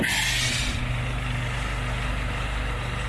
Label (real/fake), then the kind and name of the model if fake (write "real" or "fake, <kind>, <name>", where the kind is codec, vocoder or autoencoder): real